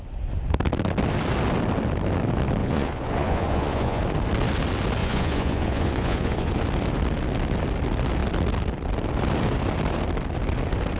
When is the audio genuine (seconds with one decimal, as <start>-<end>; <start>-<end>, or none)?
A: 0.0-2.6; 4.0-5.0; 6.5-11.0